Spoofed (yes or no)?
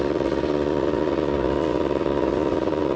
yes